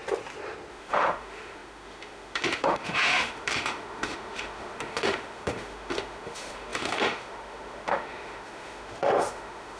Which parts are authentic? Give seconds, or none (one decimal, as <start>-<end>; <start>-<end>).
0.0-0.7